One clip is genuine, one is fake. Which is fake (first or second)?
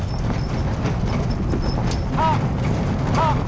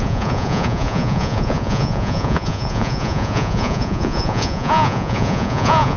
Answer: second